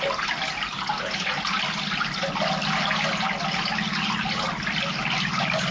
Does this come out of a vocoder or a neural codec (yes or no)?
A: no